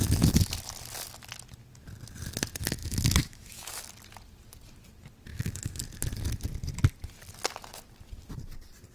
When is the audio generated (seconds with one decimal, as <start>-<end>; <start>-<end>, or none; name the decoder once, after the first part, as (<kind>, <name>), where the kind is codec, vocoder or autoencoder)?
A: 2.8-3.8 (autoencoder, DAC-VAE); 5.3-5.8